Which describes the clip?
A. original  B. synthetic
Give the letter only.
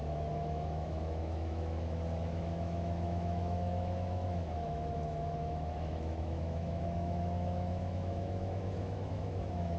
B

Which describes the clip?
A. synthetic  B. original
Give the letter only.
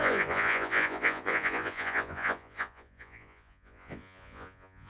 A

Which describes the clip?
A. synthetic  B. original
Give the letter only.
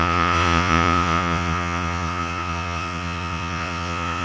A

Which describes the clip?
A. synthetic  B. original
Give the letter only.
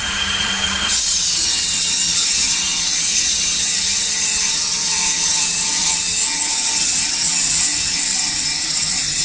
A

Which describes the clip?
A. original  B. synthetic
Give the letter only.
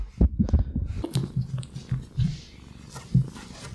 A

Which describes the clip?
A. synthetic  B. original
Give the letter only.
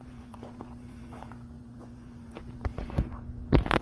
A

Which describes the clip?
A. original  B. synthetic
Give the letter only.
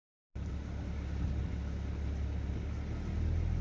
A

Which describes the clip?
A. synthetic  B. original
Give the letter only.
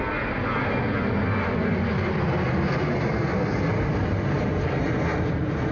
B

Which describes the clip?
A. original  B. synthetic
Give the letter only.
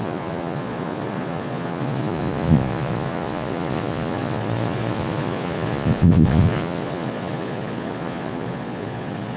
B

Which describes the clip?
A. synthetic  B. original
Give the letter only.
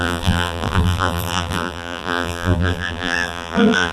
A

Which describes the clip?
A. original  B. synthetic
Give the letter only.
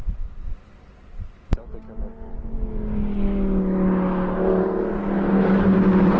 A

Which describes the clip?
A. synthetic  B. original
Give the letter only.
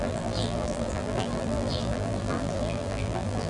A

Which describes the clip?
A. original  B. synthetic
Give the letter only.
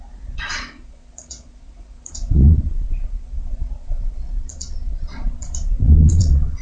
B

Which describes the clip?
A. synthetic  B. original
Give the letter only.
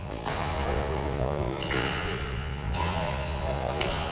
A